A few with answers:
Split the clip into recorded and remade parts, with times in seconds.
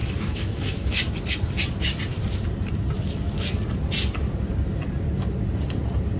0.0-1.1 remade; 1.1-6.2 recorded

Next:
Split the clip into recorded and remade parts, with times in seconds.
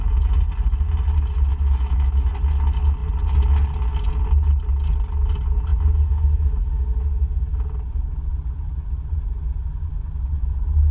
0.0-1.5 recorded; 1.5-2.3 remade; 2.3-10.9 recorded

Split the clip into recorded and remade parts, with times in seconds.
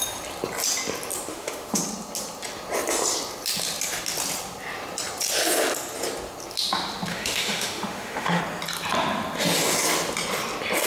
0.0-1.3 recorded; 1.3-1.8 remade; 1.8-7.1 recorded; 7.1-8.4 remade; 8.4-10.9 recorded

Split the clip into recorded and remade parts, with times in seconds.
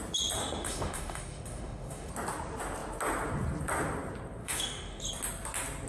0.0-0.4 recorded; 0.4-2.1 remade; 2.1-4.4 recorded; 4.4-5.0 remade; 5.0-5.9 recorded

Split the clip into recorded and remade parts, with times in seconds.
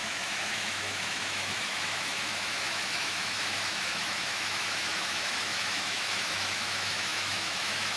0.0-8.0 remade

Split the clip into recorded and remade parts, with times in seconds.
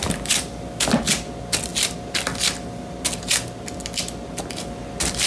0.0-5.3 recorded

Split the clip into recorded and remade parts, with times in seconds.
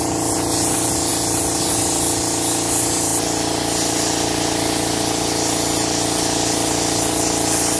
0.0-7.8 recorded